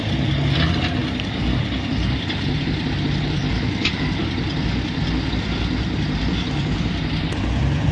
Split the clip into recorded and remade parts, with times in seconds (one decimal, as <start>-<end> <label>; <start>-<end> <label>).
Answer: 0.0-7.9 remade